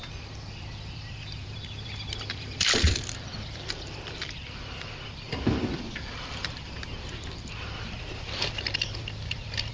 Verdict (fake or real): fake